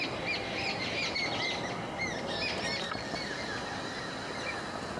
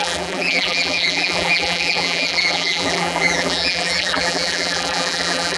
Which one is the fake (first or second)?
second